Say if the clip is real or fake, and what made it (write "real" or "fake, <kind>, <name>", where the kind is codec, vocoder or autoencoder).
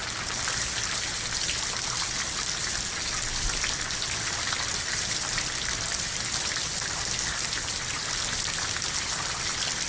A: real